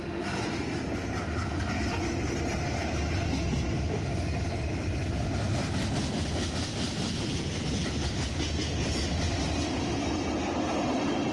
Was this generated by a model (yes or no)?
no